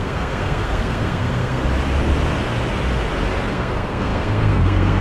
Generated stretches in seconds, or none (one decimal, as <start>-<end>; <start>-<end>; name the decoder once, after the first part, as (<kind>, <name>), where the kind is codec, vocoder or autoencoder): 0.0-1.6 (codec, SNAC); 3.5-5.0